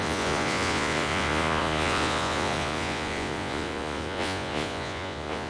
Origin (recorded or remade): remade